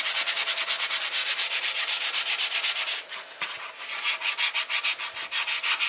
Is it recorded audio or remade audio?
recorded